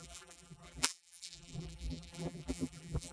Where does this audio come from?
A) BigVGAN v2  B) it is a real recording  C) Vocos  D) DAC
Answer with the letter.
A